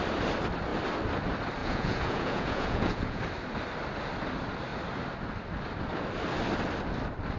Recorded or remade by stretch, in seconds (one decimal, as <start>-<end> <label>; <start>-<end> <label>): 0.0-1.6 recorded; 1.6-3.2 remade; 3.2-7.4 recorded